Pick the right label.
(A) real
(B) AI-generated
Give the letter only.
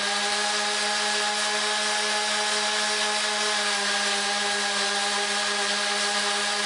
A